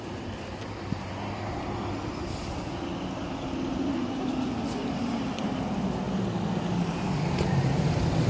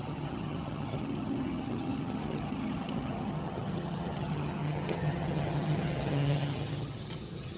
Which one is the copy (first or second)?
second